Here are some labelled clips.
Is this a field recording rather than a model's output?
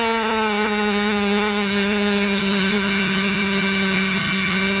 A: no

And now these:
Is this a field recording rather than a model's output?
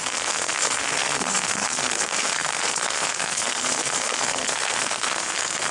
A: no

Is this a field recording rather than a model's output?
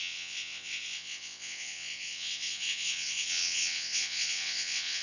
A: no